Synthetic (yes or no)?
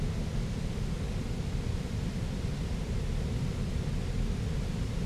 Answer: no